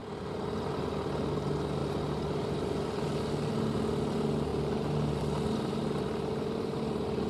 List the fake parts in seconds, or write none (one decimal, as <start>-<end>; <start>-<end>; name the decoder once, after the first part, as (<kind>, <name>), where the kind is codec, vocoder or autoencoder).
none